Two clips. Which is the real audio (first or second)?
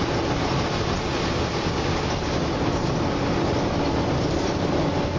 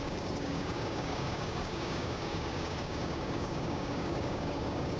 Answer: first